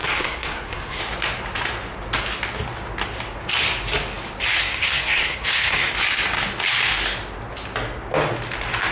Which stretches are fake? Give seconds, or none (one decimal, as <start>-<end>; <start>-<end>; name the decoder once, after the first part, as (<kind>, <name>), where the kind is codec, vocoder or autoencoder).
0.0-1.0 (codec, SNAC); 4.6-5.9